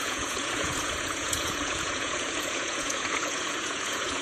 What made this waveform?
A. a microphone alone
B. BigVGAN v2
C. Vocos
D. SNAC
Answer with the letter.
C